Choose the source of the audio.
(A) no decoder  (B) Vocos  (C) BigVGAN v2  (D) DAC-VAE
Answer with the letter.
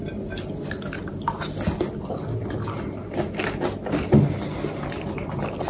A